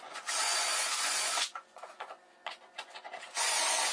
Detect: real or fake fake